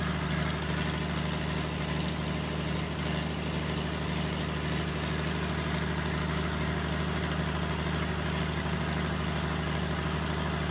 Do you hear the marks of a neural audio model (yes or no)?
no